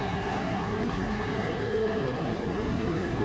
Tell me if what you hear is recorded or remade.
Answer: remade